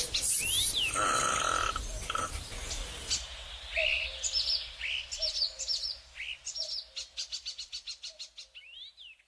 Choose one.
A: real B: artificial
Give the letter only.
A